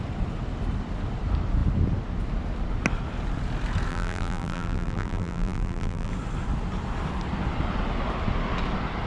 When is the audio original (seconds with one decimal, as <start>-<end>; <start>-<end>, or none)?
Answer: 0.0-3.9; 6.1-9.1